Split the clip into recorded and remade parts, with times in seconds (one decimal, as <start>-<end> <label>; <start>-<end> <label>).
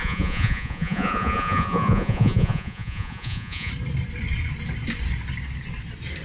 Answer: 0.0-3.7 remade; 3.7-6.2 recorded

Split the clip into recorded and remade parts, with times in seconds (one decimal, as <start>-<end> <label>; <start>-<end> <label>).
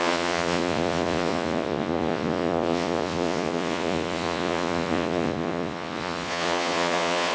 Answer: 0.0-7.3 remade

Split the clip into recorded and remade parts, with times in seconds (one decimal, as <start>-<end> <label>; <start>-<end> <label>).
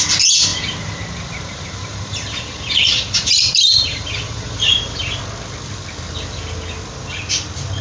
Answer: 0.0-0.5 recorded; 0.5-5.2 remade; 5.2-7.8 recorded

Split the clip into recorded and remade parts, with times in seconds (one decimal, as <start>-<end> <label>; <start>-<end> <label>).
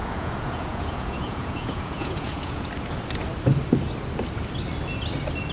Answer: 0.0-2.7 remade; 2.7-5.5 recorded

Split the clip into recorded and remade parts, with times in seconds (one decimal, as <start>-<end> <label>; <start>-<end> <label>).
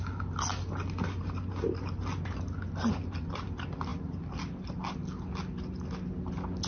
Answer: 0.0-6.7 recorded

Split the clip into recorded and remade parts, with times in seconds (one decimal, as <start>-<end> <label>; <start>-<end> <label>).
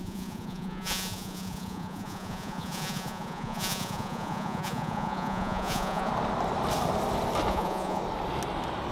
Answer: 0.0-6.1 remade; 6.1-7.5 recorded; 7.5-8.0 remade; 8.0-8.9 recorded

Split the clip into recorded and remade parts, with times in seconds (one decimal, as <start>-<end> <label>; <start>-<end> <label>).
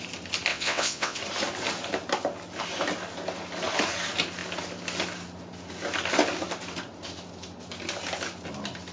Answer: 0.0-0.5 recorded; 0.5-1.2 remade; 1.2-8.9 recorded